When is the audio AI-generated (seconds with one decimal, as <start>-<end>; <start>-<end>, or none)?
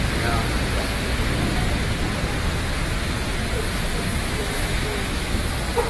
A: 4.1-5.5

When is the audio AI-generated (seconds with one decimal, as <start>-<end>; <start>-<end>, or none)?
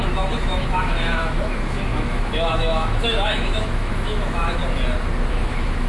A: 0.0-4.6; 5.3-5.9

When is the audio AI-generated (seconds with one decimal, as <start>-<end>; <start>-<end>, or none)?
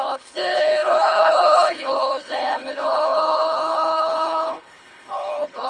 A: 0.0-5.7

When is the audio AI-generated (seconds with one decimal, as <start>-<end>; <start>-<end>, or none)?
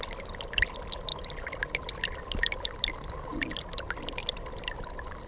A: none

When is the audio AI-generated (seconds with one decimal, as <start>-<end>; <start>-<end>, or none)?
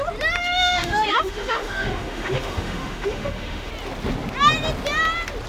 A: 0.4-3.7